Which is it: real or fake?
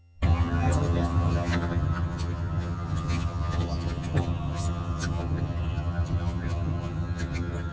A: fake